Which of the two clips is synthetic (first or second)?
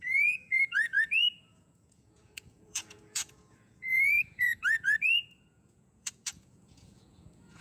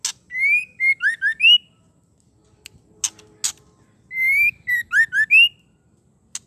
first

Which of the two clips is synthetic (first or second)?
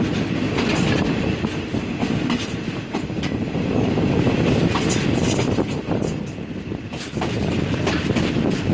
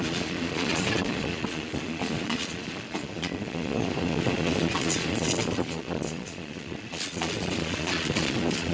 second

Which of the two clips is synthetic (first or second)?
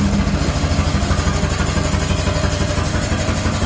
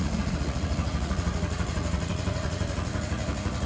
second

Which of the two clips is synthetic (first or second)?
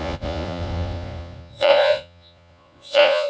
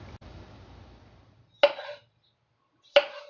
first